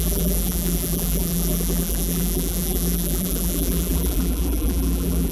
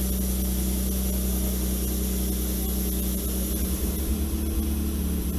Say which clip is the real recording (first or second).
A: second